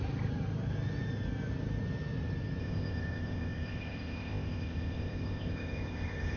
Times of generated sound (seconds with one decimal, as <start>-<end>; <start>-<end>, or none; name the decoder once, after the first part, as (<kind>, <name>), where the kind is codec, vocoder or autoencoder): 2.6-6.4 (codec, ZipCodec)

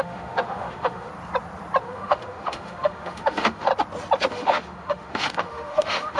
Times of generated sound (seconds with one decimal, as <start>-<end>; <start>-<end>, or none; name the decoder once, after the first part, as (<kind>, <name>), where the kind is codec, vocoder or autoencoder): 0.0-1.1 (autoencoder, DAC-VAE); 1.8-3.7; 4.3-6.2

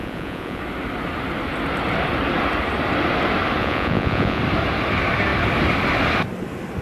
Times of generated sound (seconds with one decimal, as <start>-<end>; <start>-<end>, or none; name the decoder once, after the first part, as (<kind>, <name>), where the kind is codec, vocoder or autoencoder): 0.0-0.6 (vocoder, Vocos); 3.6-4.4

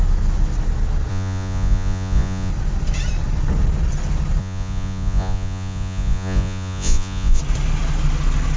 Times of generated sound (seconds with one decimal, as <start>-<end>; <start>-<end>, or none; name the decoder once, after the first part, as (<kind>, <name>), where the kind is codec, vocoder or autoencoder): 1.1-2.5 (vocoder, Vocos); 4.4-7.4

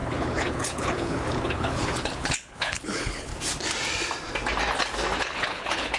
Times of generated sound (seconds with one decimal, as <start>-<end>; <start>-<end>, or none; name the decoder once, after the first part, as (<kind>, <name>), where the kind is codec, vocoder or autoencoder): 0.0-3.3 (codec, HILCodec); 5.2-6.0

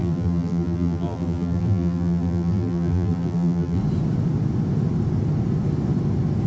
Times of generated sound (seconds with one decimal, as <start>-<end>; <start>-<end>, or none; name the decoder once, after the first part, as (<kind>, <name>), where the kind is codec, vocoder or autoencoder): 0.0-3.8 (vocoder, BigVGAN v2)

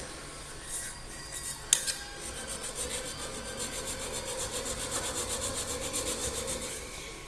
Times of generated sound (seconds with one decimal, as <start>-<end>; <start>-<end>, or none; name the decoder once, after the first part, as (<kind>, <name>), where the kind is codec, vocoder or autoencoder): 6.2-7.3 (autoencoder, DAC-VAE)

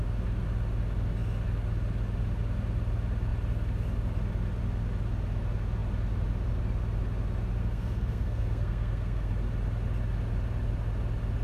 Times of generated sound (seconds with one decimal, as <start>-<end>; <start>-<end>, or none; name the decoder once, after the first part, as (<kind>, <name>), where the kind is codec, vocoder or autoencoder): 7.6-9.3 (codec, SNAC)